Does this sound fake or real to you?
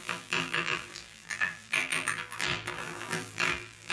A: fake